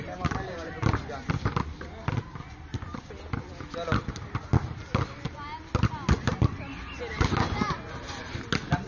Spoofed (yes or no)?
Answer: no